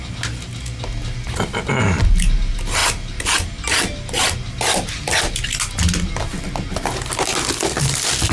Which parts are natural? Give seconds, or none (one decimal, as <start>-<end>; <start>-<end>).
0.0-8.3